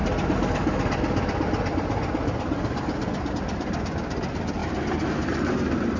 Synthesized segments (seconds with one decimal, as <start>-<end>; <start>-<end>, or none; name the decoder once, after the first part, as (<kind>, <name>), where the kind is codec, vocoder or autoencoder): 3.3-4.6 (vocoder, BigVGAN v2); 5.1-6.0